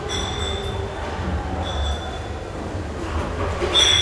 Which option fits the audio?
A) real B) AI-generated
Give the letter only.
A